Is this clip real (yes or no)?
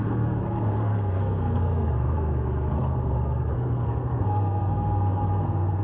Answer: no